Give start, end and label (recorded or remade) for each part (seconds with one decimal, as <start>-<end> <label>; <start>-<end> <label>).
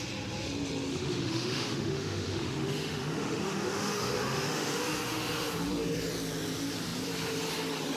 0.0-0.9 recorded; 0.9-5.7 remade; 5.7-8.0 recorded